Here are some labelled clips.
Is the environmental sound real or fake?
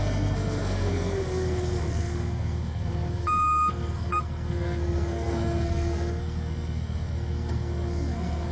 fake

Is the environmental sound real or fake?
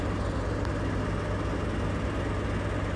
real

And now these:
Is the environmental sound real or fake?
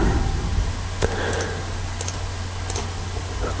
real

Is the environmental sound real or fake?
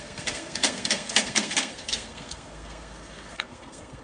fake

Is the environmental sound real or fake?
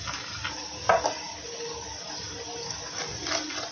real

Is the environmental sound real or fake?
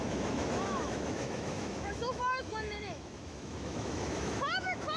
fake